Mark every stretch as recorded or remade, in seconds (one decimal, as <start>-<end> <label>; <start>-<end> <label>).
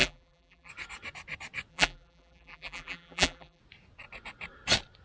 0.0-0.7 remade; 0.7-1.7 recorded; 1.7-3.6 remade; 3.6-5.0 recorded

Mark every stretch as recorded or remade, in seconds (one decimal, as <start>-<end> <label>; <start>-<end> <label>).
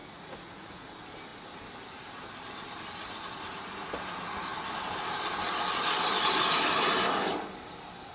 0.0-0.9 remade; 0.9-8.1 recorded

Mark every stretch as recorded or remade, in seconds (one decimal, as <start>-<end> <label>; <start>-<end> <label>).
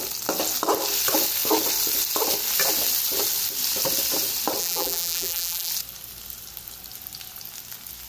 0.0-4.6 recorded; 4.6-5.7 remade; 5.7-8.1 recorded